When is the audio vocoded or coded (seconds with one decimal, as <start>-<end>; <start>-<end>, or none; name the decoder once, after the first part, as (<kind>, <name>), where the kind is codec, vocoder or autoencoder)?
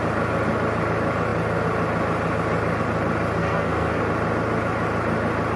3.4-4.0 (codec, SNAC)